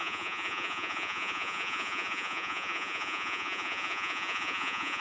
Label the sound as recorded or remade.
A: remade